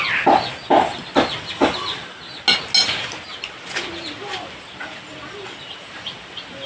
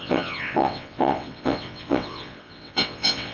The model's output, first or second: second